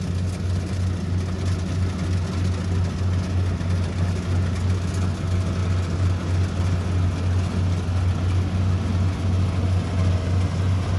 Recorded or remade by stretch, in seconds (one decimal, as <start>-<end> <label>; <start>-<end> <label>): 0.0-11.0 recorded